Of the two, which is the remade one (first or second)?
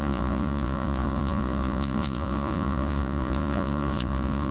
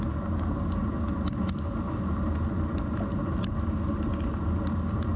first